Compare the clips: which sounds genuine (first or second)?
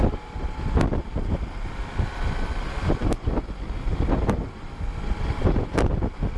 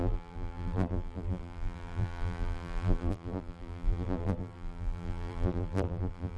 first